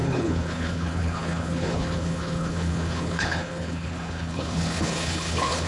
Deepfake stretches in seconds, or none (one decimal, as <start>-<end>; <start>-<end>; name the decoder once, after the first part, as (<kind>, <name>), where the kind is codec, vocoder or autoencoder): 0.0-5.7 (codec, HILCodec)